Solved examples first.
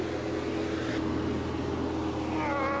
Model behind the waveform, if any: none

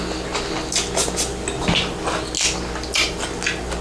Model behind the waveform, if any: none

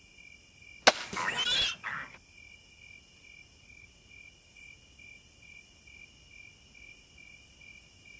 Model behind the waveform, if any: none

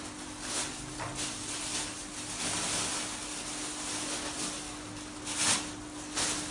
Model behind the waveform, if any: none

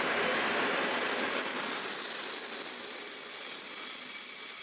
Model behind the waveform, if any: none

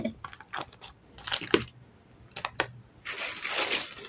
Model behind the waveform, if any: none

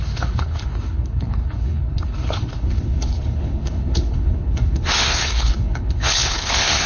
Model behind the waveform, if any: codec, HILCodec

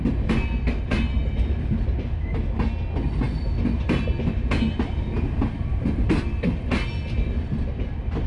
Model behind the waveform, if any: none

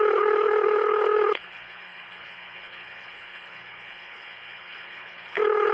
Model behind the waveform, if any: codec, HILCodec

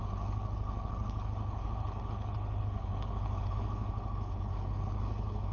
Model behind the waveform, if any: codec, HILCodec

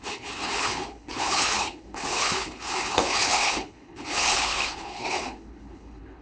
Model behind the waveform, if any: codec, HILCodec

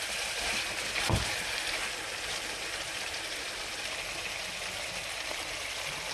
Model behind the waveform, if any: none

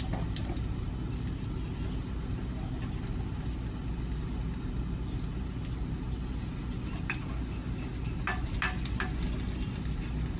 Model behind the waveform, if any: none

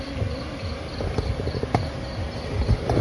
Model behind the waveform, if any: none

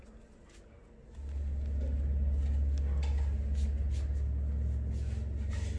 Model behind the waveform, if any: none